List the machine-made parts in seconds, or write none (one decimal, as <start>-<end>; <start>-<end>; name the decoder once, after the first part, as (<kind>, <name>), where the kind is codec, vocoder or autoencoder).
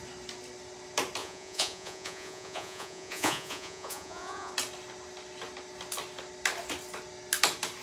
1.2-4.5 (vocoder, Vocos)